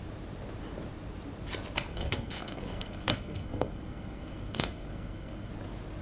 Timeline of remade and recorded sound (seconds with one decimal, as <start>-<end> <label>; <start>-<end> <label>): 0.0-1.9 recorded; 1.9-5.5 remade; 5.5-6.0 recorded